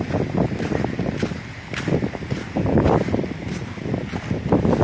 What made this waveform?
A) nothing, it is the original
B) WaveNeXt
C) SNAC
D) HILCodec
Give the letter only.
A